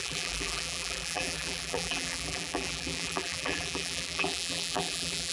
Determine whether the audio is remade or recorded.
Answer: remade